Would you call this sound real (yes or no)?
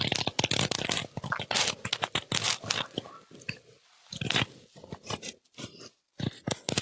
yes